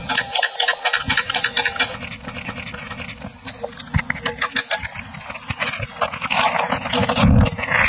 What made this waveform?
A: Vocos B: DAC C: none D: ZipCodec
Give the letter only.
C